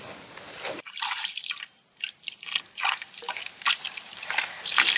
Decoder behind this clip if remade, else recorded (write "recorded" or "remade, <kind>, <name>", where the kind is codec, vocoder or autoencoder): recorded